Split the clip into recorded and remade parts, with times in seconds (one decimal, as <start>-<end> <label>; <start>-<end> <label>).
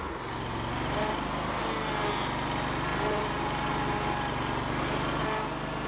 0.0-2.9 recorded; 2.9-3.7 remade; 3.7-5.9 recorded